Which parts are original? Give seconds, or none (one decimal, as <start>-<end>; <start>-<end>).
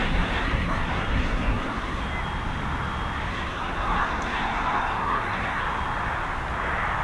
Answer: 2.0-3.3; 5.6-7.0